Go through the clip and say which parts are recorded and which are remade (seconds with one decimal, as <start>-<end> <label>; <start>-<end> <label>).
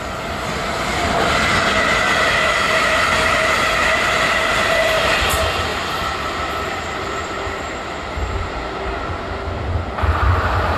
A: 0.0-4.5 recorded; 4.5-5.1 remade; 5.1-5.7 recorded; 5.7-7.6 remade; 7.6-10.8 recorded